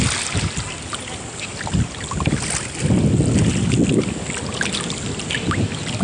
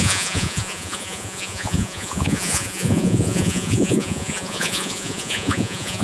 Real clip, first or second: first